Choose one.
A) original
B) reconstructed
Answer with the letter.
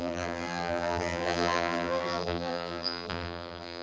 B